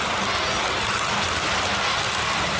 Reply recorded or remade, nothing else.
recorded